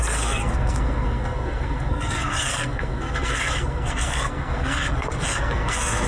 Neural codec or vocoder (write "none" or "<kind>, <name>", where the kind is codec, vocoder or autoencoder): codec, SNAC